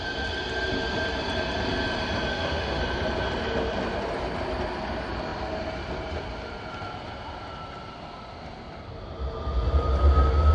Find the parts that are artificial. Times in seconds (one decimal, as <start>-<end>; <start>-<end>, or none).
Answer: 2.3-2.8